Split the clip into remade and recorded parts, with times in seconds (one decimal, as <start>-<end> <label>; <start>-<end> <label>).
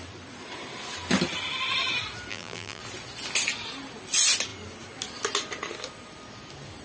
0.0-2.3 recorded; 2.3-2.8 remade; 2.8-6.8 recorded